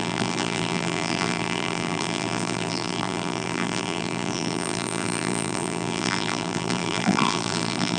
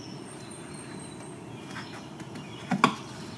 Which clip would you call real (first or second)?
second